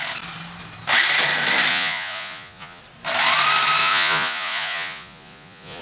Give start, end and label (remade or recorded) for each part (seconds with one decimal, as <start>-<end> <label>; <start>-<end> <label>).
0.0-1.7 recorded; 1.7-2.8 remade; 2.8-3.8 recorded; 3.8-5.8 remade